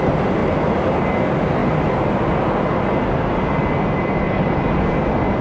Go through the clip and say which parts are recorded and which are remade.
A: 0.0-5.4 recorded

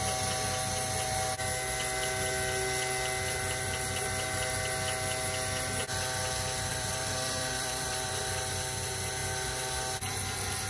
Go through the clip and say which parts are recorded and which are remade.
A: 0.0-6.7 recorded; 6.7-8.2 remade; 8.2-10.7 recorded

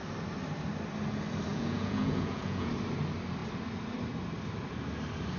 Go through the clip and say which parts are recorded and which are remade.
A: 0.0-1.5 recorded; 1.5-2.7 remade; 2.7-5.4 recorded